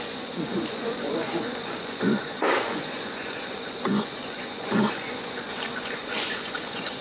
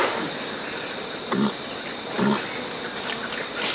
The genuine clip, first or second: second